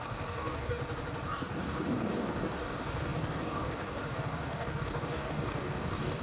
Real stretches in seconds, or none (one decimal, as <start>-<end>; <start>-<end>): 0.8-1.3